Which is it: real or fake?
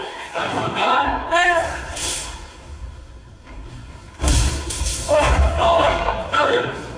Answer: fake